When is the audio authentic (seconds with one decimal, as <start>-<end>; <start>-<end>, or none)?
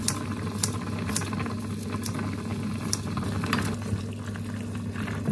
0.0-5.3